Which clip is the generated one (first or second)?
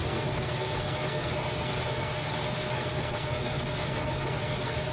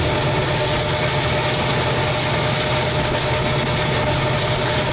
first